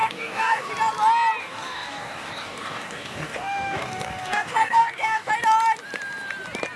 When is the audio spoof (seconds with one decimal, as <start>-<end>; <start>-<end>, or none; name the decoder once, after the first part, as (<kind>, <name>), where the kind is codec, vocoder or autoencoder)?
0.0-0.7 (codec, DAC); 1.4-5.3